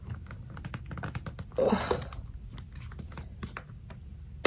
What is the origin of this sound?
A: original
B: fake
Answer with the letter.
A